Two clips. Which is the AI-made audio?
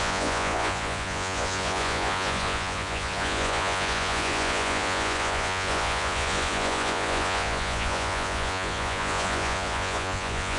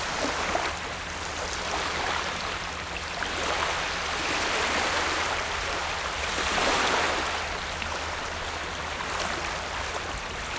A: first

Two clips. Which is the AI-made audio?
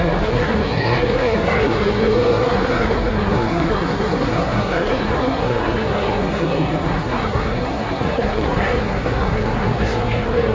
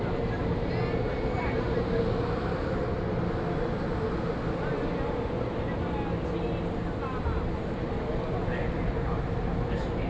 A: first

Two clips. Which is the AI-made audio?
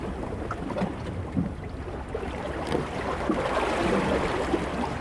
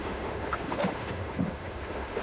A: second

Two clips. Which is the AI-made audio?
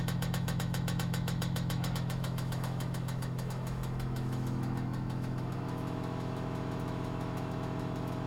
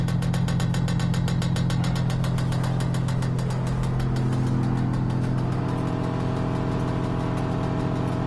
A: first